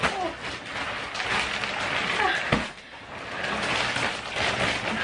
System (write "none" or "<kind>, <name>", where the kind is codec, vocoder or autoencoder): none